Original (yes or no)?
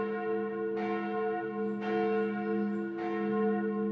yes